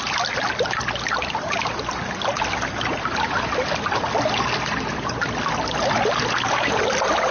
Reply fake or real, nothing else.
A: real